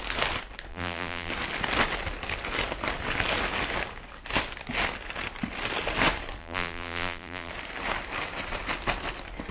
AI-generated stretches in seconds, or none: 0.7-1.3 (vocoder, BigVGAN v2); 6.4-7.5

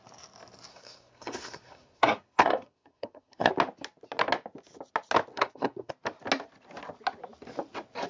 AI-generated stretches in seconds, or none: 0.7-3.5 (codec, SNAC); 5.3-5.9

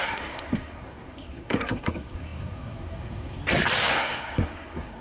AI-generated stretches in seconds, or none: 0.0-3.4 (codec, SNAC); 3.9-5.0

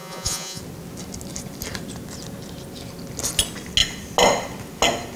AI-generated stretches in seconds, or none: 0.0-0.6 (vocoder, Vocos)

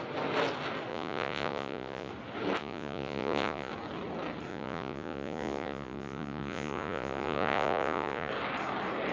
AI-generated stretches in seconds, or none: 0.9-2.1 (vocoder, Vocos); 2.6-3.7; 4.5-8.3

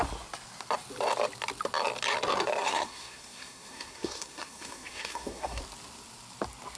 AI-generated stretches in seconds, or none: 2.6-5.6 (codec, SNAC)

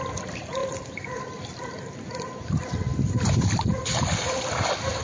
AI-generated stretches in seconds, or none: 0.6-2.3 (vocoder, BigVGAN v2); 2.9-4.1

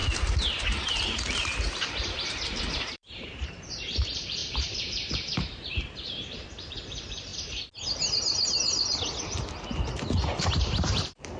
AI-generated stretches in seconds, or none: 0.0-7.3 (vocoder, BigVGAN v2); 10.4-11.4